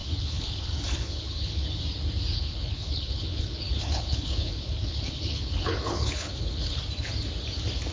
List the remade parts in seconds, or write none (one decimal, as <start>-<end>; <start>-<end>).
0.0-1.8; 2.3-6.8